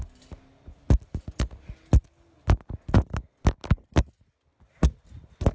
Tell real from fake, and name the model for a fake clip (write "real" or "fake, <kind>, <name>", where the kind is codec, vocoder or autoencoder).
real